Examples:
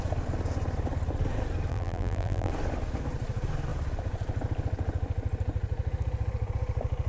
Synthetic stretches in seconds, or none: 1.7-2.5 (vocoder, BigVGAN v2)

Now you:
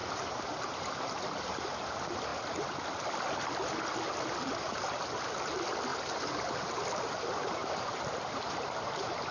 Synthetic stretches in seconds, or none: none